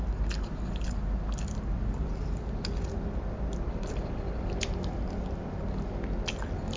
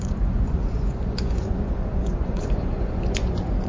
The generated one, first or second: second